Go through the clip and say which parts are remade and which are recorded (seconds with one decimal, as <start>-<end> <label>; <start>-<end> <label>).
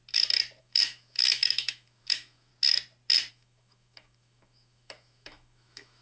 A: 0.0-0.6 recorded; 0.6-2.5 remade; 2.5-3.3 recorded; 3.3-6.0 remade